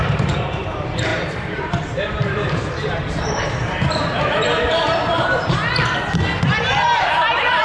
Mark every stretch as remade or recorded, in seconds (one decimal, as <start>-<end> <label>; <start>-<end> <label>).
0.0-5.6 remade; 5.6-7.0 recorded; 7.0-7.6 remade